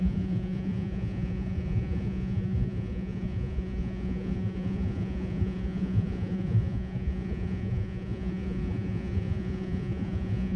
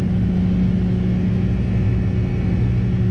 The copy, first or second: first